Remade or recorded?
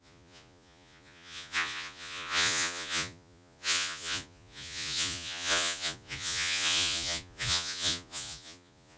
remade